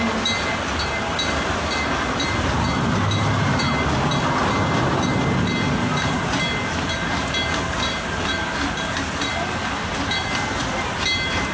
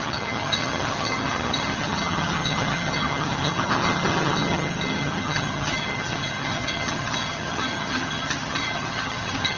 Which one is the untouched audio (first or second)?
first